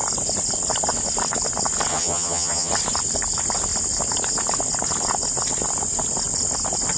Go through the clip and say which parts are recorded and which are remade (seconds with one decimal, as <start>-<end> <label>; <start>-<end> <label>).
0.0-1.9 recorded; 1.9-2.7 remade; 2.7-7.0 recorded